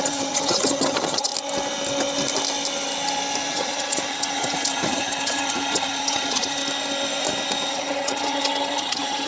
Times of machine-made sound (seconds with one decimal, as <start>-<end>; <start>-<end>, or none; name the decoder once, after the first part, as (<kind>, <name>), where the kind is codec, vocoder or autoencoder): 0.0-1.3 (vocoder, HiFi-GAN); 3.5-6.6; 7.7-9.3